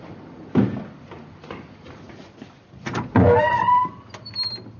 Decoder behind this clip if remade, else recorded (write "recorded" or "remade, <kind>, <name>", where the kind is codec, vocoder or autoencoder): recorded